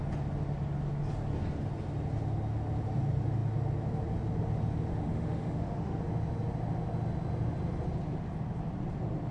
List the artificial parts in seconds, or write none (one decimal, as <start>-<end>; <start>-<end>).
4.9-6.0